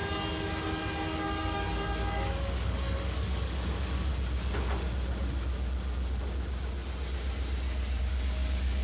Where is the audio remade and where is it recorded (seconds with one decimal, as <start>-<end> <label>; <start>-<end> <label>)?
0.0-1.2 recorded; 1.2-4.1 remade; 4.1-8.0 recorded; 8.0-8.8 remade